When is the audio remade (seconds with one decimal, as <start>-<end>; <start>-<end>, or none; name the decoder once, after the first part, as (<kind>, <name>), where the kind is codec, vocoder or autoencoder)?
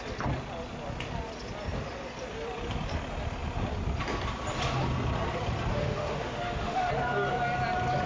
5.7-6.9 (autoencoder, DAC-VAE)